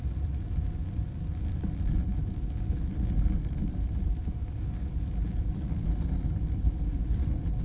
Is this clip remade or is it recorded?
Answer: recorded